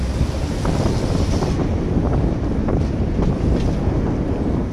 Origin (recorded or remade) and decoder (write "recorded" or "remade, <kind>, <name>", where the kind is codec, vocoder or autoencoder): recorded